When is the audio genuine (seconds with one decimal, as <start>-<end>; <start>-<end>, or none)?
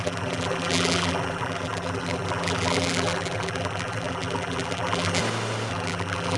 5.2-5.7